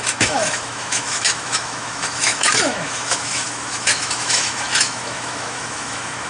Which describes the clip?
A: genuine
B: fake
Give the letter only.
B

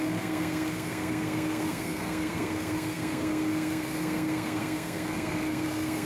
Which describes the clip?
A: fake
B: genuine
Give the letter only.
A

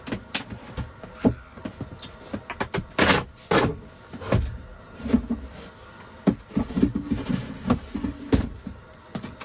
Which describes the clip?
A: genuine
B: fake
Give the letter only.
A